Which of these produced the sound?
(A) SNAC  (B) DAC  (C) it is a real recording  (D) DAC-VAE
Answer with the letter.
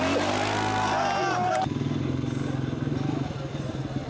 C